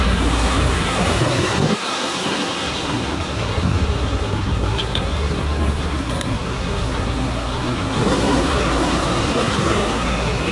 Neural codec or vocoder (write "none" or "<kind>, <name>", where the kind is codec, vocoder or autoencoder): codec, SNAC